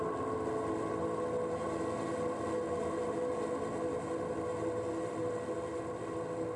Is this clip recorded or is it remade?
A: recorded